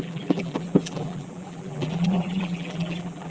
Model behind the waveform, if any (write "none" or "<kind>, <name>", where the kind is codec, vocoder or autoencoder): vocoder, BigVGAN v2